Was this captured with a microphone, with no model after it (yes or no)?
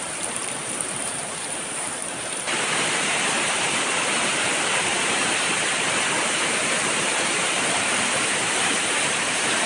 no